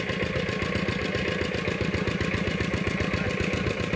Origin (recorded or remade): recorded